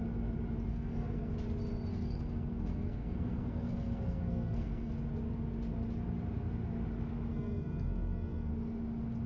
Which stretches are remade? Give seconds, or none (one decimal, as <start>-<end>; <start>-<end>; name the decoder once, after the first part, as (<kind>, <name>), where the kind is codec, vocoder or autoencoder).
0.7-1.3 (codec, SNAC); 1.9-4.9; 7.3-8.5

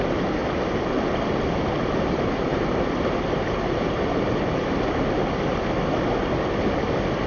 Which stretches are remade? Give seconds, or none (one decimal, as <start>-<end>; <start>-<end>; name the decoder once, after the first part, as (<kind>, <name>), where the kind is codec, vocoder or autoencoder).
none

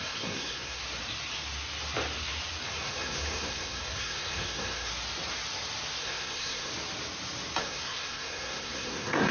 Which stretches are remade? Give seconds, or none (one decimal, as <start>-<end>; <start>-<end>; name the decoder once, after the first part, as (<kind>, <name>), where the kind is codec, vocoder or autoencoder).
0.0-0.8 (codec, SNAC); 2.7-4.9; 6.0-6.7; 7.6-9.3